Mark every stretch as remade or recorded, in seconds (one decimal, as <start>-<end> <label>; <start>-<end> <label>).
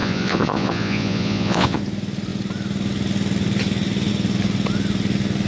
0.0-1.8 remade; 1.8-5.5 recorded